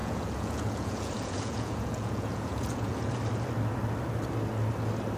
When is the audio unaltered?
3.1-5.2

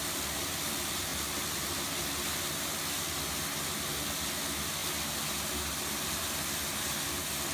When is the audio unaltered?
0.0-7.5

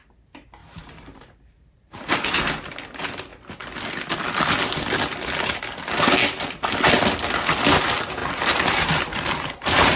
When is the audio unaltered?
0.0-0.6; 2.3-8.2

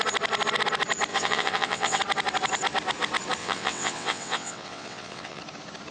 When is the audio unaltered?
0.0-1.1; 2.0-3.4; 5.4-5.9

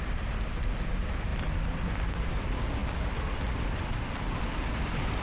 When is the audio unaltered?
2.8-3.5